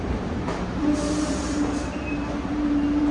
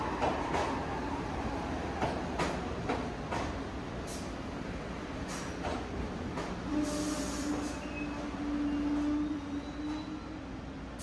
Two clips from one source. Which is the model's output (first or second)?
first